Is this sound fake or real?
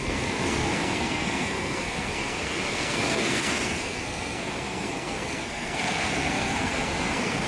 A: fake